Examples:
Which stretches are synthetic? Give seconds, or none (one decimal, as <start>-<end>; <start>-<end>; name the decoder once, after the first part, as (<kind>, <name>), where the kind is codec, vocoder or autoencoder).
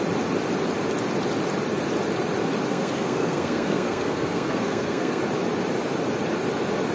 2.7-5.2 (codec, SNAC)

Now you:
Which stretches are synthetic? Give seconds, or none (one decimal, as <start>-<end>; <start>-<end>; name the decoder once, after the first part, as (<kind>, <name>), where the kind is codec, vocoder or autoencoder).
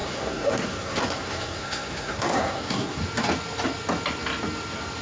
0.0-3.0 (codec, SNAC)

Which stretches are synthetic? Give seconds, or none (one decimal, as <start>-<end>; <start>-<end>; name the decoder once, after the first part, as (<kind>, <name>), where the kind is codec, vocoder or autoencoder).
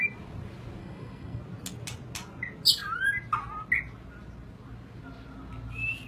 0.8-1.4 (codec, SNAC)